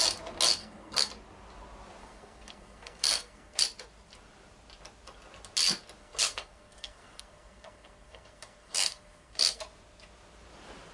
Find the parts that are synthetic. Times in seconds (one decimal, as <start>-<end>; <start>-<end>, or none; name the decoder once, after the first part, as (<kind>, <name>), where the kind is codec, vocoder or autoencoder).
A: 0.6-1.1 (codec, SNAC); 2.0-3.6; 6.0-9.6